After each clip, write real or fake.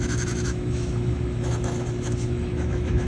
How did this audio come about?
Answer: fake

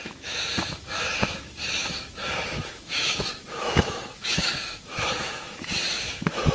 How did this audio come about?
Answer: fake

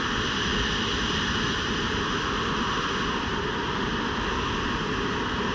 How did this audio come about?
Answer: real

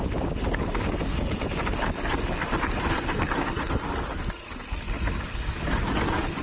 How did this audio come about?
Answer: real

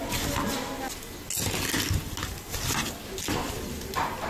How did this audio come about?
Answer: real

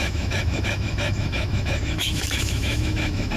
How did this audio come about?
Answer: fake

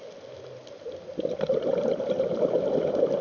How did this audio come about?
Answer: real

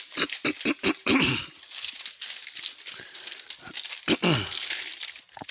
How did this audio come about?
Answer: real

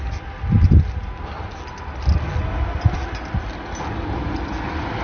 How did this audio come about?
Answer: real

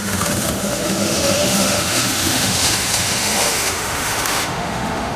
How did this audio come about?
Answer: fake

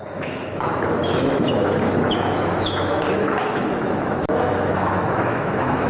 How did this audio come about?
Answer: fake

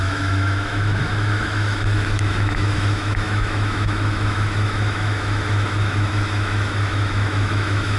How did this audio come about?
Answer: fake